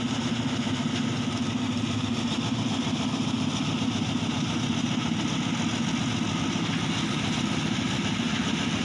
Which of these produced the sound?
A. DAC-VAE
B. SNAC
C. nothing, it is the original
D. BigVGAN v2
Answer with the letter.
C